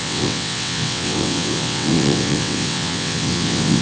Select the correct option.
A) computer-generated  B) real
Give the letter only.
A